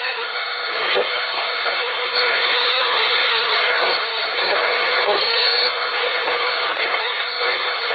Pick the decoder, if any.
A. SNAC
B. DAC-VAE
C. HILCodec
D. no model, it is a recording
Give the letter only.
A